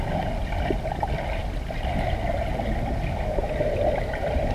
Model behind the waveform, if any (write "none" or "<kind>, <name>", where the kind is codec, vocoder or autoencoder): none